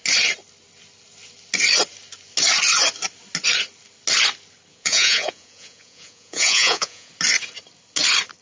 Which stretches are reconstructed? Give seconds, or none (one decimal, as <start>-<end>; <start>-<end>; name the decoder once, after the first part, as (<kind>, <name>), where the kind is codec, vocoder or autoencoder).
4.7-7.1 (vocoder, Vocos)